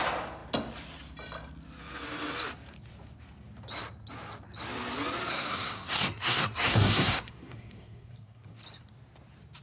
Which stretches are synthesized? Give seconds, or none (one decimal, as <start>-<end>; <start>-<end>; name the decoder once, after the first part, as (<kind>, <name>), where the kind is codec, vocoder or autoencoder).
5.3-8.6 (codec, SNAC)